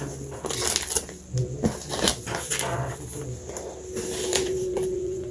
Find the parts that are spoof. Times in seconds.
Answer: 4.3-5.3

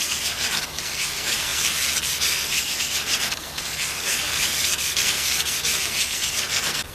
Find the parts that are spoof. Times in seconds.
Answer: 0.0-6.9

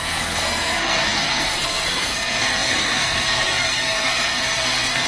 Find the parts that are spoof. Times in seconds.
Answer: 0.0-5.1

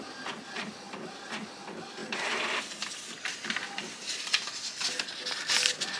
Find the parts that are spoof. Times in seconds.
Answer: 2.0-2.6